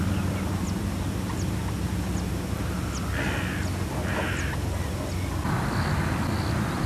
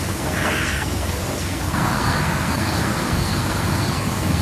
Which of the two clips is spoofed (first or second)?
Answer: second